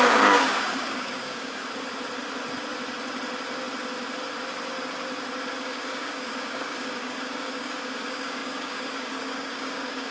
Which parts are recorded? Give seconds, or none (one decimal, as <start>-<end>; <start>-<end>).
1.6-5.6